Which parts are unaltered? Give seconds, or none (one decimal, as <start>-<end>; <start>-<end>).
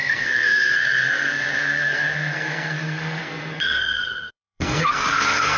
none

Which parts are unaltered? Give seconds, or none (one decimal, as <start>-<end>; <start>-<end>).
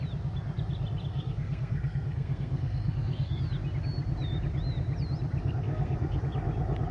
0.0-1.1; 3.4-5.4; 6.2-6.9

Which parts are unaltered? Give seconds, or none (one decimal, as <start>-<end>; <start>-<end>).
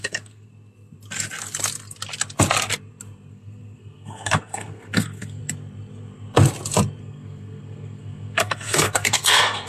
0.5-3.3; 5.4-7.0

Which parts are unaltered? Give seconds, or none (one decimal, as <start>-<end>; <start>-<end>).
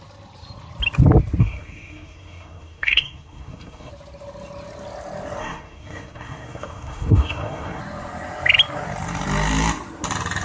0.0-1.4; 3.9-5.4; 7.8-10.4